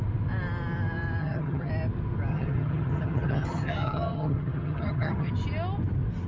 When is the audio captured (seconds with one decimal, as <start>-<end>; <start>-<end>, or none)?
0.0-1.2; 1.7-2.3; 5.3-6.3